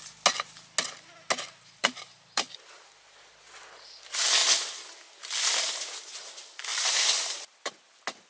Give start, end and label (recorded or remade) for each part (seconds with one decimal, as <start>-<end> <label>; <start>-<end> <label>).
0.0-1.8 recorded; 1.8-3.3 remade; 3.3-6.7 recorded; 6.7-7.7 remade; 7.7-8.3 recorded